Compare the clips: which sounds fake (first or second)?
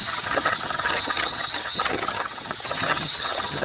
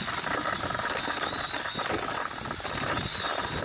first